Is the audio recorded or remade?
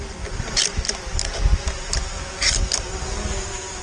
recorded